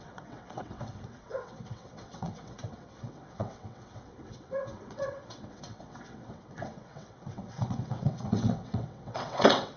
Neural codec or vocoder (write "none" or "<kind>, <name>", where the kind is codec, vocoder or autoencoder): vocoder, WaveNeXt